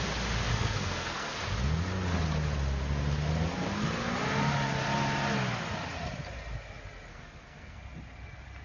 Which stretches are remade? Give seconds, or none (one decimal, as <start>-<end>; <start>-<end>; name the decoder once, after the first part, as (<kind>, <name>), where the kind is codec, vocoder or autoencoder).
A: 0.5-1.4 (codec, SNAC); 7.1-7.8